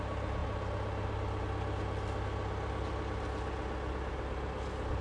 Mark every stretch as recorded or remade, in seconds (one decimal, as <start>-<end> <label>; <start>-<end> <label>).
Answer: 0.0-5.0 recorded